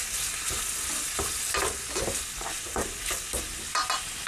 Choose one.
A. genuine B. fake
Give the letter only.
A